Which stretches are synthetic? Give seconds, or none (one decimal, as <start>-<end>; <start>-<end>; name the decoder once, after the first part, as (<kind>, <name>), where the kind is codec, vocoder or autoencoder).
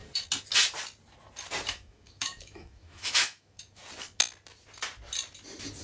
1.7-3.8 (autoencoder, DAC-VAE)